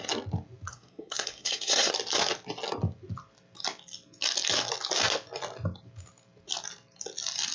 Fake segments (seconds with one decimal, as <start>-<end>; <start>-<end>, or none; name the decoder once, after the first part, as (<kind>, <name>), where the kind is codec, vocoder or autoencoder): 0.7-1.9 (codec, SNAC)